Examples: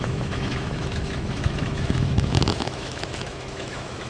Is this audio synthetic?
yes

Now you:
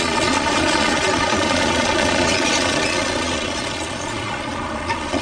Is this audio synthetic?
yes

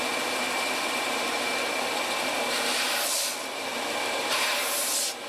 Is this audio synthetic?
no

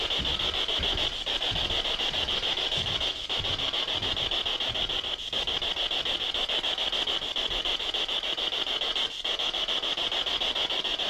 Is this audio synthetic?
no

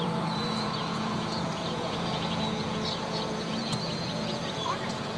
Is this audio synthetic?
yes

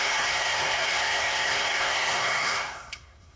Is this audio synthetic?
yes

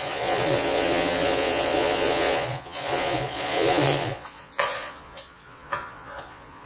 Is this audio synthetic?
yes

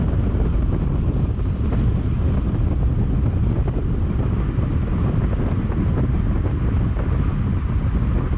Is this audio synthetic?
no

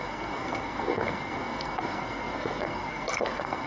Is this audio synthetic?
yes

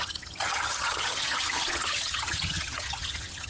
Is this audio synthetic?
yes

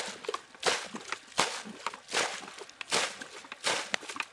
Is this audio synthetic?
no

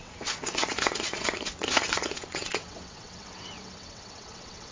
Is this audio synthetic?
yes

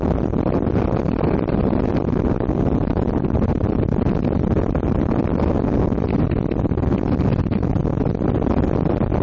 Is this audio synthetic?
no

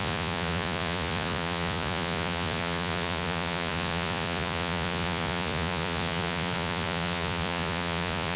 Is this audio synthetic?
yes